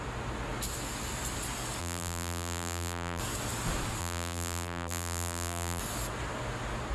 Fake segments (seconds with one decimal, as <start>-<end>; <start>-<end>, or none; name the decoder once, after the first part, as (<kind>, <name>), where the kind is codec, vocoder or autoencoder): 1.8-3.2 (vocoder, BigVGAN v2); 4.0-5.8